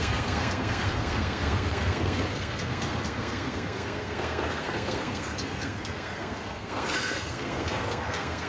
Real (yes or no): no